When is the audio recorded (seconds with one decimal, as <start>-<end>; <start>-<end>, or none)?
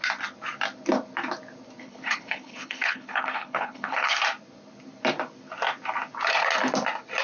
0.0-1.8; 4.2-7.2